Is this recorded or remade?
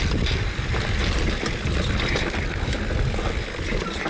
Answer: recorded